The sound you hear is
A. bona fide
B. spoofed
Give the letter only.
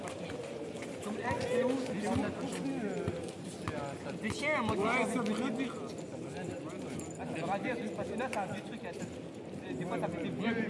A